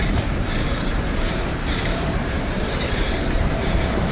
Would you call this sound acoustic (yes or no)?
no